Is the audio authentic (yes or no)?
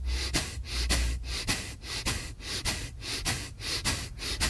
yes